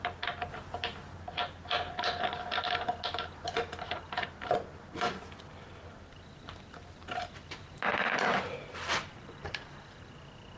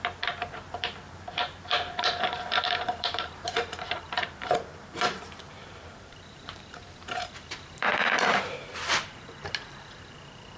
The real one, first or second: first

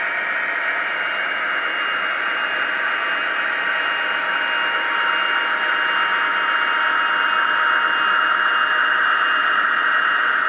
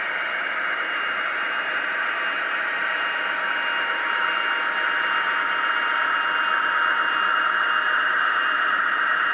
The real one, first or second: first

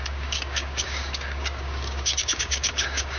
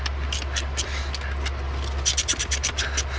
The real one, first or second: second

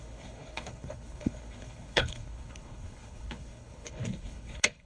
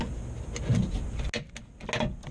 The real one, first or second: second